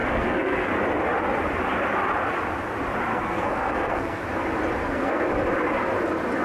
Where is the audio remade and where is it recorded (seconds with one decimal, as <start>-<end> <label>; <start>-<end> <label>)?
0.0-0.7 remade; 0.7-3.1 recorded; 3.1-4.2 remade; 4.2-4.8 recorded; 4.8-5.3 remade; 5.3-6.4 recorded